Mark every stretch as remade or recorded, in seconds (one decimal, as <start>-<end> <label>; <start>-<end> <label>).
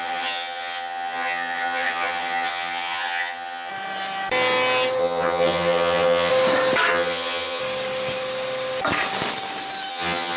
0.0-3.7 remade; 3.7-5.0 recorded; 5.0-6.3 remade; 6.3-6.9 recorded; 6.9-7.6 remade; 7.6-9.9 recorded; 9.9-10.4 remade